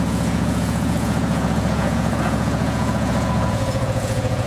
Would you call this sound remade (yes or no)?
yes